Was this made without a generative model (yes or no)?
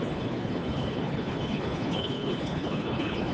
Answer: no